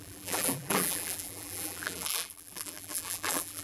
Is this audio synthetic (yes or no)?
yes